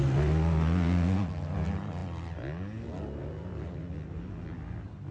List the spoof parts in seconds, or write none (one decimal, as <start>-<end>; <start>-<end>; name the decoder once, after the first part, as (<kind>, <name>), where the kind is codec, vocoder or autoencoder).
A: none